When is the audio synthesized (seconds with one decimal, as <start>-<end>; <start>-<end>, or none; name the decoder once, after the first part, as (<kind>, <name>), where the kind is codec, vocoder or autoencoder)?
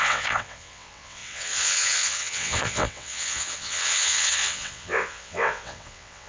0.0-6.3 (vocoder, WaveNeXt)